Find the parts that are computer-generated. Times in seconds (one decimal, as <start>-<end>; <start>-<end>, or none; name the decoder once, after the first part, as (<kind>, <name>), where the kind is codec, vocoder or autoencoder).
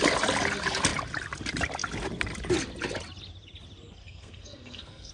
4.0-5.1 (codec, SNAC)